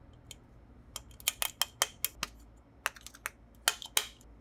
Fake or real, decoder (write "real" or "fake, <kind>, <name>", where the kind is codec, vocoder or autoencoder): real